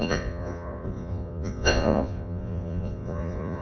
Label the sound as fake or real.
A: fake